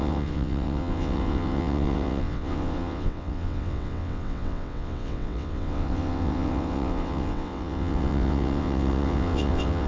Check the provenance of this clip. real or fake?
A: fake